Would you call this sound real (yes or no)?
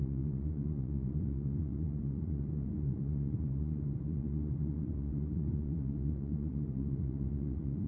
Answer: no